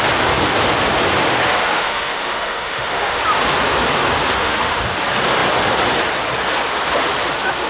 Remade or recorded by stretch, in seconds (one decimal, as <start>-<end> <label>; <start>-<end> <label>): 0.0-1.4 recorded; 1.4-3.2 remade; 3.2-4.3 recorded; 4.3-4.8 remade; 4.8-7.7 recorded